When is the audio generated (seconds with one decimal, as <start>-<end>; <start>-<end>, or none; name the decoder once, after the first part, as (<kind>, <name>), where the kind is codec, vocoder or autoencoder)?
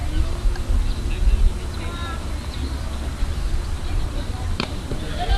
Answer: 3.8-4.9 (vocoder, BigVGAN v2)